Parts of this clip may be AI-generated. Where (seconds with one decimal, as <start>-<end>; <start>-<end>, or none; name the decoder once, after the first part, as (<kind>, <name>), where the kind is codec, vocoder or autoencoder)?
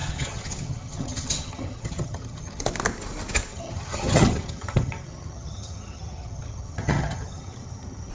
0.0-2.6 (vocoder, HiFi-GAN); 3.5-8.1